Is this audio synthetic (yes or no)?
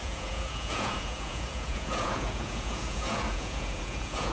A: yes